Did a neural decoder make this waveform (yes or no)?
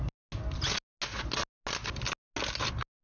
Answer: no